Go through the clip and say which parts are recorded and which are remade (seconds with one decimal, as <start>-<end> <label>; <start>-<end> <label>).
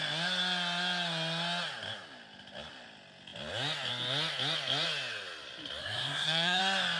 0.0-5.8 recorded; 5.8-6.6 remade; 6.6-7.0 recorded